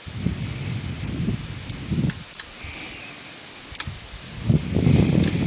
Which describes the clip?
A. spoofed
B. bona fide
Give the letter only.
B